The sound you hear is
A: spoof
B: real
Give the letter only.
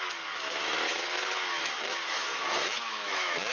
A